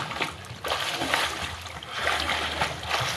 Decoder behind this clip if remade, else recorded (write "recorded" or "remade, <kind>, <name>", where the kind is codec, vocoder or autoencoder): recorded